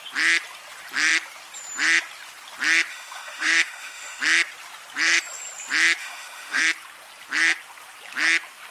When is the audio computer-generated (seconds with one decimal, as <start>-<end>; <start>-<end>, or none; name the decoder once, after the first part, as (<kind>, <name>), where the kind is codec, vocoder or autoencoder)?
2.9-4.2 (autoencoder, DAC-VAE); 6.0-6.6

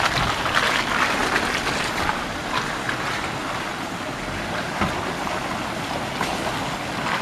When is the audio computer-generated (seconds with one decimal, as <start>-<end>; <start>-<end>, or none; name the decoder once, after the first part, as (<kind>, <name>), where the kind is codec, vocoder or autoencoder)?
none